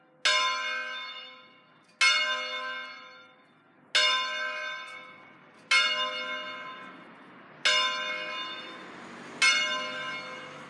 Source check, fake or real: real